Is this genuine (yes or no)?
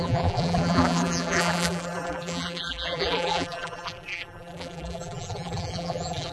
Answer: no